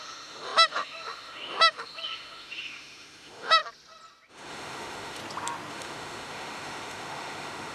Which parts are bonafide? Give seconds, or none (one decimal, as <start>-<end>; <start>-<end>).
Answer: 3.6-4.3; 5.2-5.7